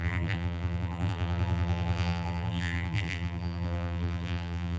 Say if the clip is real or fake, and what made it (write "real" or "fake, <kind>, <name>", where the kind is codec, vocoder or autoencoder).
fake, vocoder, BigVGAN v2